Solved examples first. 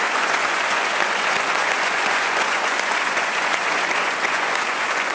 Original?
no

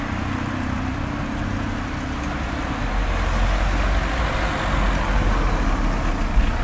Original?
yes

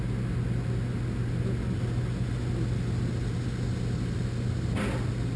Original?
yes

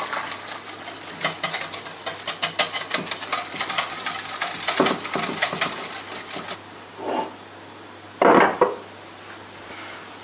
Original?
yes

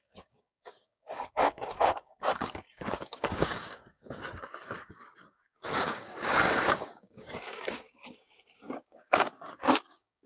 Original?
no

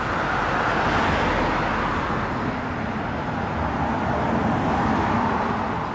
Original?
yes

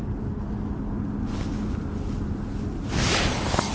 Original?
yes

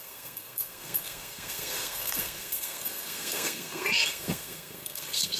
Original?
no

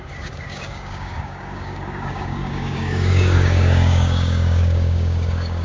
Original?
no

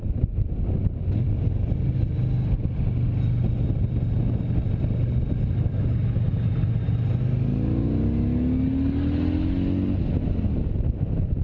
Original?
yes